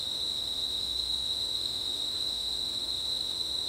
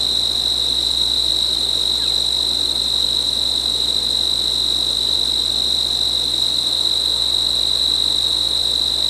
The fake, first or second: first